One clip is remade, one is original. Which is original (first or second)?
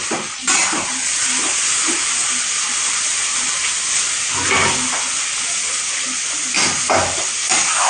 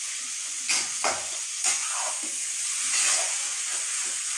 first